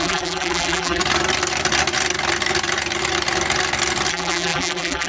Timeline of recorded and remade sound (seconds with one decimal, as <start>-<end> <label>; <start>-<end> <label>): 0.0-1.0 remade; 1.0-4.1 recorded; 4.1-5.1 remade